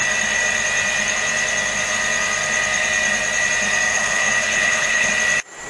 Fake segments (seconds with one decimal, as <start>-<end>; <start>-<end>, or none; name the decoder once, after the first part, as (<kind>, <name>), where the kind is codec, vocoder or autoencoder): 3.9-5.1 (codec, HILCodec)